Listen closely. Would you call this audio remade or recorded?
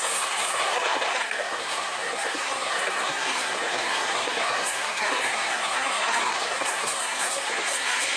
remade